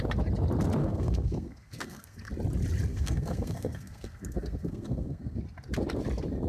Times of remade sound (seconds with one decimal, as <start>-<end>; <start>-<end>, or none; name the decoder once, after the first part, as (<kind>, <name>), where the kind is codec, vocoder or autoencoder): 0.8-2.3 (codec, SNAC); 2.9-5.4